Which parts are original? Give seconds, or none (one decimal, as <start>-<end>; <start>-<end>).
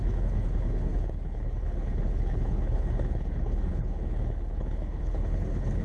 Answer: none